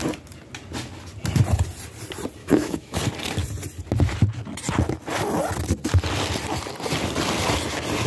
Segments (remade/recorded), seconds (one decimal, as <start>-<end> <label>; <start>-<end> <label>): 0.0-2.4 recorded; 2.4-3.0 remade; 3.0-8.1 recorded